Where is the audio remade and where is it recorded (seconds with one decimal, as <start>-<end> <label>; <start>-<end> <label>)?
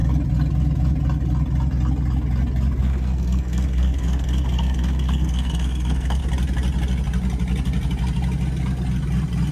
0.0-2.8 recorded; 2.8-6.2 remade; 6.2-9.5 recorded